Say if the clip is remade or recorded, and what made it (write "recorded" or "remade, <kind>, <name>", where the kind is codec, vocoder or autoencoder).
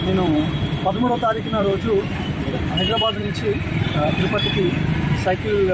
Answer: remade, vocoder, BigVGAN v2